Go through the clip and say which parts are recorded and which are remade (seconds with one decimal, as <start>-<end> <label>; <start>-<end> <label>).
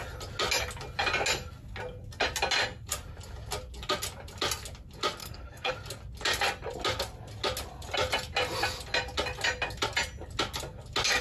0.0-5.2 recorded; 5.2-5.7 remade; 5.7-11.2 recorded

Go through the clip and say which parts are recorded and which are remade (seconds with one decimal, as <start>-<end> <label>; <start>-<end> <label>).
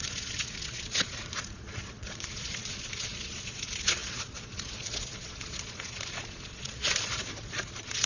0.0-8.1 remade